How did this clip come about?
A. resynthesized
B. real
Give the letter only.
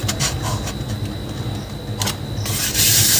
B